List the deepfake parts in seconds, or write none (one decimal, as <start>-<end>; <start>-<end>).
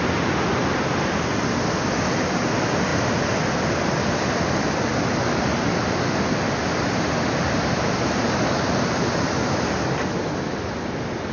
none